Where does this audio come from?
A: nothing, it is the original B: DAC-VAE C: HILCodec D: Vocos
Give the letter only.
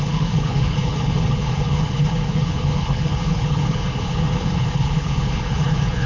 C